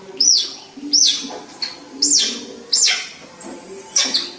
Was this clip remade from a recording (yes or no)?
no